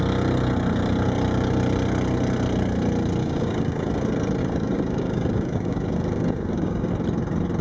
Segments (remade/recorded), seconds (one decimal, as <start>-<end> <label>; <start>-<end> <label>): 0.0-3.2 recorded; 3.2-3.9 remade; 3.9-4.4 recorded; 4.4-6.9 remade; 6.9-7.6 recorded